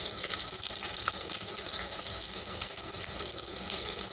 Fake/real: fake